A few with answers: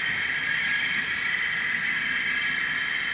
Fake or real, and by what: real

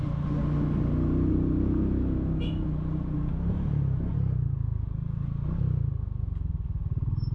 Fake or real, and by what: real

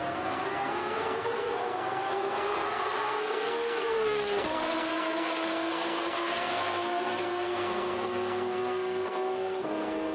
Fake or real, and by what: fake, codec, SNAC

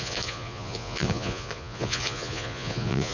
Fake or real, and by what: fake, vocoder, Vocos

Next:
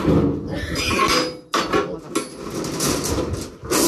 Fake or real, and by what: real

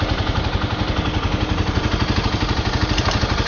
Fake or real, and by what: real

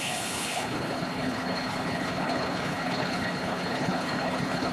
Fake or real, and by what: fake, codec, HILCodec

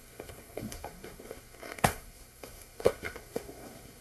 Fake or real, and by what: fake, codec, SNAC